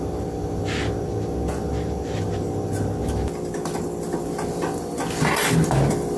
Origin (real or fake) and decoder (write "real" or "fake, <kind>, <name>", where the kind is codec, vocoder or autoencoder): real